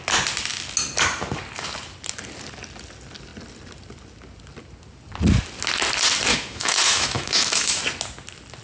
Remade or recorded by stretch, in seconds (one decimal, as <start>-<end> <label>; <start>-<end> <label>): 0.0-6.3 recorded; 6.3-7.8 remade; 7.8-8.6 recorded